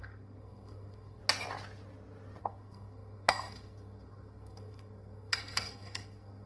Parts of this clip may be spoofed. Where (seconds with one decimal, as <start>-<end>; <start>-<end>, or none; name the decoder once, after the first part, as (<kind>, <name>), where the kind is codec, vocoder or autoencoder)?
0.0-1.2 (codec, SNAC); 2.4-6.5